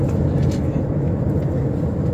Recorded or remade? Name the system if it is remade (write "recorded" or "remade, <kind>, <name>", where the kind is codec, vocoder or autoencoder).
recorded